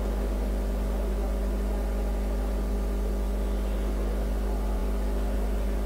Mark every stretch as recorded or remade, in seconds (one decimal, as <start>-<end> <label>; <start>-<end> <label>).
0.0-5.9 recorded